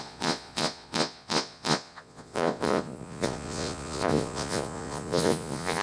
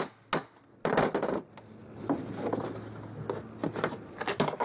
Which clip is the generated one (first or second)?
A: first